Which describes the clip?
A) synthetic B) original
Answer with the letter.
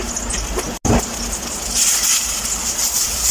B